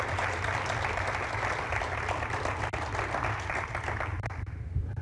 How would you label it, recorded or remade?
recorded